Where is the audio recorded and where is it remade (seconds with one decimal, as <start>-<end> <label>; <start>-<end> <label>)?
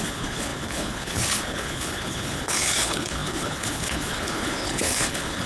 0.0-5.5 remade